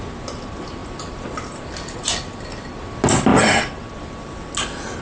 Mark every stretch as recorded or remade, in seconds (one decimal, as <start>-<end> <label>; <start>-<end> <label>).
0.0-5.0 recorded